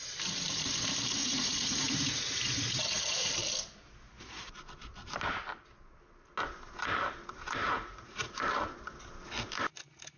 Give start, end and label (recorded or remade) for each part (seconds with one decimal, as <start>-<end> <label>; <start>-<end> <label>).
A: 0.0-1.2 recorded; 1.2-3.3 remade; 3.3-7.6 recorded; 7.6-8.3 remade; 8.3-10.2 recorded